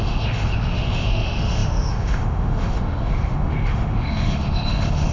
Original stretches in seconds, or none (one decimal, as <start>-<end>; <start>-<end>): none